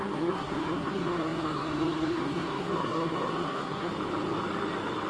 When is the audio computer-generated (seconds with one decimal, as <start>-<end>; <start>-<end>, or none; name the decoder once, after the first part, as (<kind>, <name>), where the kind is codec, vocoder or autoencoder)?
0.0-3.9 (codec, SNAC)